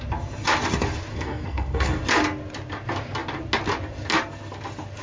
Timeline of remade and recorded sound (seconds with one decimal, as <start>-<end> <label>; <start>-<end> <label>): 0.0-1.1 recorded; 1.1-2.0 remade; 2.0-5.0 recorded